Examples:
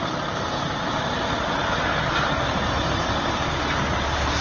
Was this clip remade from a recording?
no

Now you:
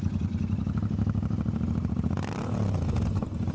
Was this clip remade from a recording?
no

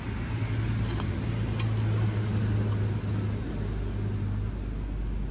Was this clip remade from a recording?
no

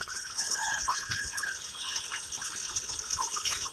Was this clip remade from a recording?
yes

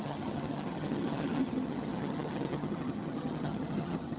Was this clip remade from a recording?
yes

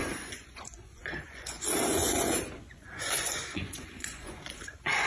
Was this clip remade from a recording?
yes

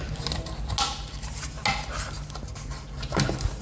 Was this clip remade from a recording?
no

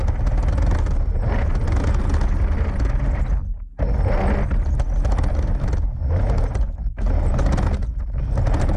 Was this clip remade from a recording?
no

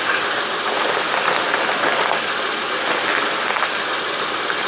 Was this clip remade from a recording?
no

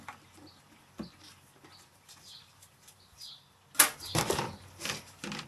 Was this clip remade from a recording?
no